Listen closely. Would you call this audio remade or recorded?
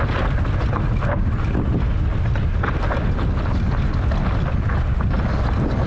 recorded